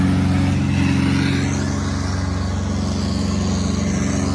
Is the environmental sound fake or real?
real